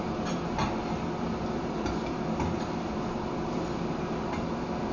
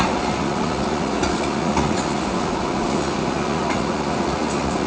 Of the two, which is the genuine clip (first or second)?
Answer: first